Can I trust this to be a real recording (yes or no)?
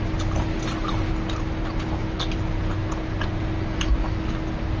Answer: yes